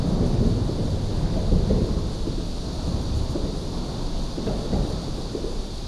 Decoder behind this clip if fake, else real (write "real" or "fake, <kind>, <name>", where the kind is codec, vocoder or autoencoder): real